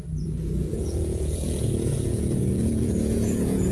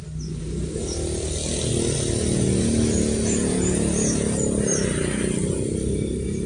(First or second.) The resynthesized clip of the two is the first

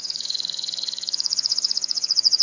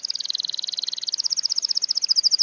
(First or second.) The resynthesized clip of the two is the first